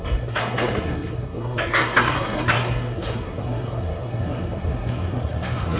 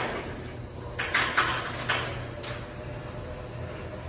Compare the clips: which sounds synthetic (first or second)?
first